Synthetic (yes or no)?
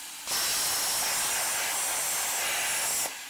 no